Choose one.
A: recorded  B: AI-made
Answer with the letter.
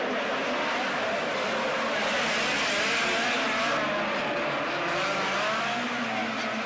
A